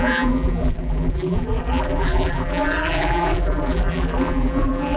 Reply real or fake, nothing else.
fake